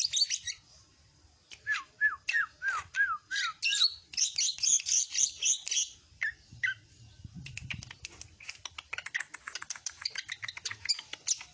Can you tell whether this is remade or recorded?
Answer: recorded